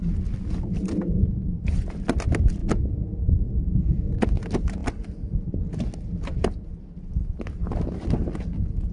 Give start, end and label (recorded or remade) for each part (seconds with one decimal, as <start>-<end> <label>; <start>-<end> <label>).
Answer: 0.0-8.9 recorded